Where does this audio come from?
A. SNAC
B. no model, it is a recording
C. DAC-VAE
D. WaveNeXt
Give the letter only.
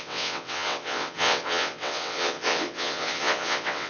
D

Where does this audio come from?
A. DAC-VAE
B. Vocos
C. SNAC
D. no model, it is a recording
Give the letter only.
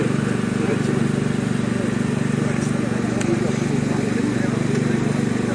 D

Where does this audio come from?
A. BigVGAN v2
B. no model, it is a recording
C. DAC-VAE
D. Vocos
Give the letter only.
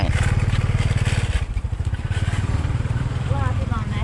A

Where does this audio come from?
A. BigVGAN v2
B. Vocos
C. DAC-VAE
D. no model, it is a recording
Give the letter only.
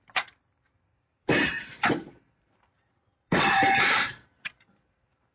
A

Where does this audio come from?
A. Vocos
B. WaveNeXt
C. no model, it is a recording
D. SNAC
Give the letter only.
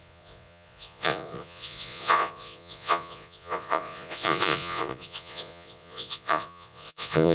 A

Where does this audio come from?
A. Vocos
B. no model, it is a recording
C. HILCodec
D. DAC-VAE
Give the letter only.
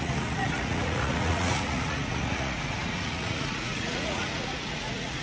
A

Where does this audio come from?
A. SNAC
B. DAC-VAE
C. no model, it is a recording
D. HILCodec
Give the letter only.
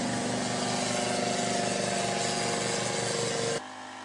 C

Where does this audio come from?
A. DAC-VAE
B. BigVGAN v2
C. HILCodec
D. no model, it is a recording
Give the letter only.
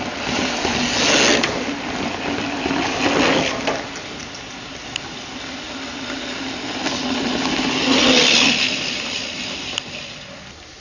D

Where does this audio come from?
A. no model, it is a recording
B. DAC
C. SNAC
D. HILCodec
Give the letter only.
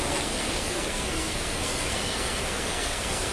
C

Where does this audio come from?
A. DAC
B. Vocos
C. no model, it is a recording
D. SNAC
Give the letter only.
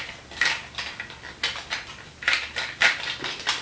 C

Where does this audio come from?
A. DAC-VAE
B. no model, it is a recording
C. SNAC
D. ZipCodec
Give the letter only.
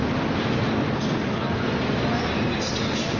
B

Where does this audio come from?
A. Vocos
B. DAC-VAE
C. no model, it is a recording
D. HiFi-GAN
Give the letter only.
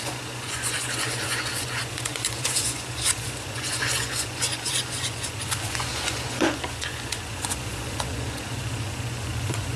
A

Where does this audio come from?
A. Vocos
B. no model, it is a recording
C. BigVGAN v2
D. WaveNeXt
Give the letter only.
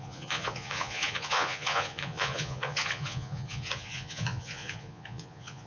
A